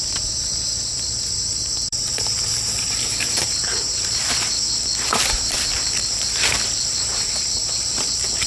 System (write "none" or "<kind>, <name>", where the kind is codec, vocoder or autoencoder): vocoder, BigVGAN v2